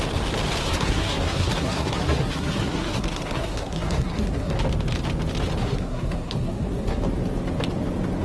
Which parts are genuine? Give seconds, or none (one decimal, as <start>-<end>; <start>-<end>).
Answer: 0.0-0.6; 4.5-5.6; 7.0-8.2